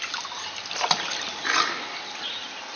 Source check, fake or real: real